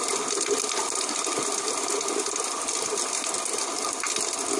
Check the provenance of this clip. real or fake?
real